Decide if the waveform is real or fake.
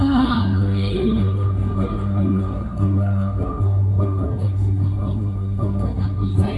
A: fake